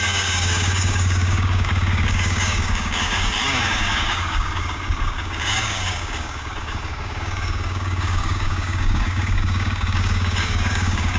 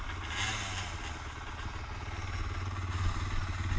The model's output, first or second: first